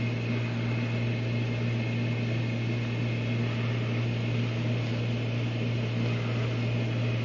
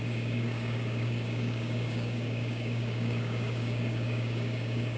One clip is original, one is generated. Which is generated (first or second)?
second